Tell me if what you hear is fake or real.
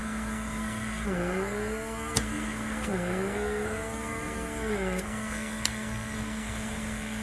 fake